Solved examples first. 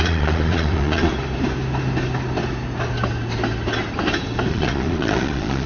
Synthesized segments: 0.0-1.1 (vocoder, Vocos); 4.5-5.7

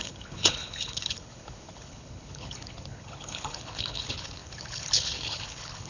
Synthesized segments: 0.0-5.9 (codec, HILCodec)

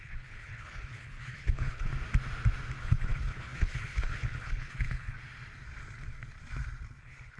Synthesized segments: 0.0-1.9 (codec, HILCodec); 2.8-5.2; 7.0-7.4

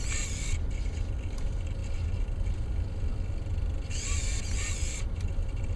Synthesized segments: none

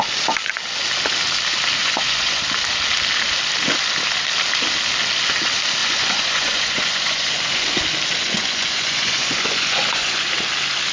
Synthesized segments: 1.8-2.4 (vocoder, Vocos); 5.8-7.8; 8.2-10.3

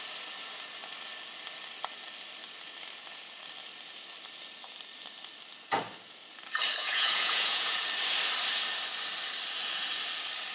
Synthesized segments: 6.8-7.8 (vocoder, Vocos)